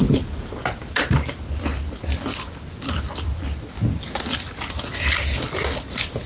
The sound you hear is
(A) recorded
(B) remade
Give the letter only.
A